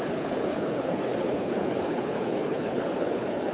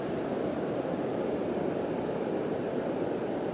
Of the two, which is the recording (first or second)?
second